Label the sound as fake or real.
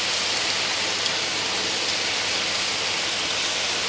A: real